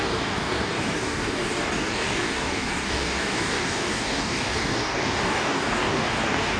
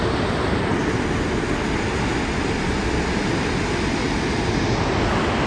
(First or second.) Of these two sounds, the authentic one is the second